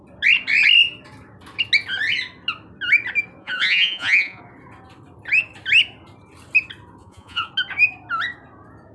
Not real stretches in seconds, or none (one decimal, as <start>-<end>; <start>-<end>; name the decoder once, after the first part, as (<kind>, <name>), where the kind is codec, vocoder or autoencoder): 3.4-4.4 (vocoder, Vocos); 7.0-7.5